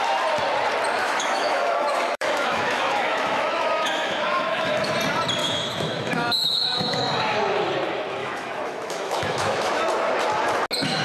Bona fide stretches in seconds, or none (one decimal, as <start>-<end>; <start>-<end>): 0.0-1.0; 4.9-5.4; 7.0-8.2; 9.7-11.0